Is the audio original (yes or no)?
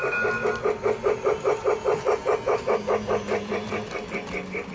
yes